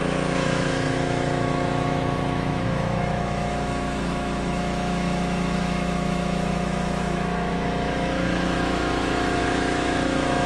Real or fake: fake